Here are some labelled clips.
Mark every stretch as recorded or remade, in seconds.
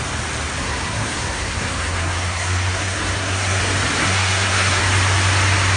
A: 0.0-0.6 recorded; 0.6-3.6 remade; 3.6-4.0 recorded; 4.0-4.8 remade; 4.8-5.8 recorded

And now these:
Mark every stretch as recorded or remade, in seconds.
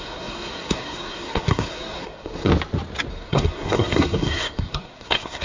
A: 0.0-2.5 remade; 2.5-3.1 recorded; 3.1-5.4 remade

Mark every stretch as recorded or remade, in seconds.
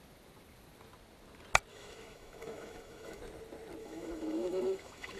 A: 0.0-1.7 recorded; 1.7-3.2 remade; 3.2-3.8 recorded; 3.8-5.2 remade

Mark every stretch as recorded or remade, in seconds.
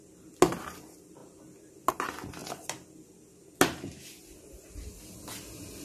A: 0.0-5.8 recorded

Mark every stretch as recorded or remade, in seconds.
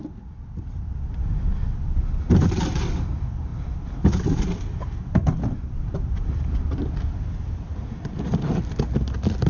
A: 0.0-9.5 recorded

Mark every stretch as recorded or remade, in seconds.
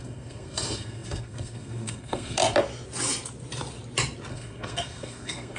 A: 0.0-2.4 remade; 2.4-4.3 recorded; 4.3-5.6 remade